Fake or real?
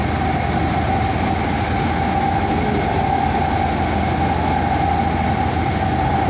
real